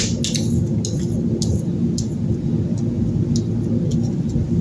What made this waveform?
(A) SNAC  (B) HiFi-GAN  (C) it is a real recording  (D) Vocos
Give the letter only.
C